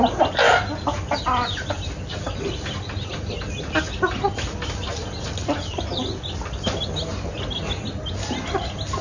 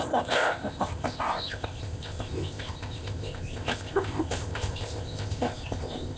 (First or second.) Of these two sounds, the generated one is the second